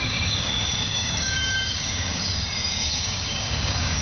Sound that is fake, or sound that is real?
fake